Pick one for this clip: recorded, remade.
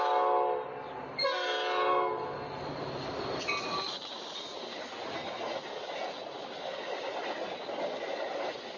recorded